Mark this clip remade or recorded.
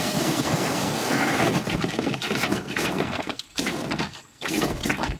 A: remade